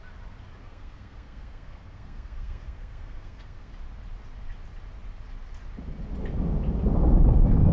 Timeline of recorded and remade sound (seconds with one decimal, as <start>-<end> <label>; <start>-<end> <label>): 0.0-0.6 recorded; 0.6-3.7 remade; 3.7-7.7 recorded